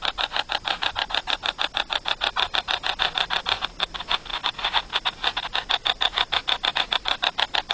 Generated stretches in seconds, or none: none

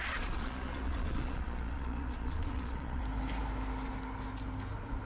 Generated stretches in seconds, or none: 0.0-3.0 (vocoder, Vocos)

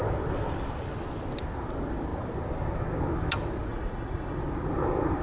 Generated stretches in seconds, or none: 3.7-4.4 (vocoder, Vocos)